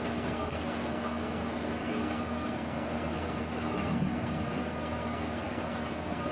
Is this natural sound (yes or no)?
no